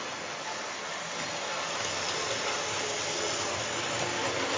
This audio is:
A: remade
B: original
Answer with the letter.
B